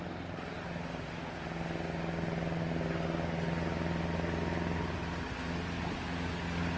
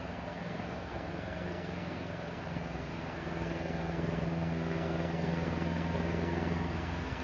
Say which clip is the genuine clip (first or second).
first